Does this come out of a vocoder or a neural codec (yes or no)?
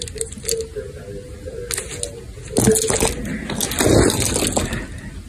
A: no